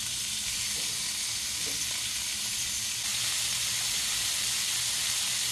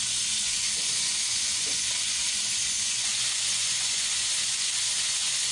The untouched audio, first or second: first